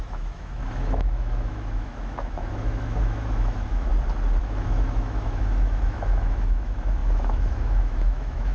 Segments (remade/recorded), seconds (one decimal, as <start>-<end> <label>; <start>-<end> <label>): 0.0-3.9 remade; 3.9-4.4 recorded; 4.4-8.5 remade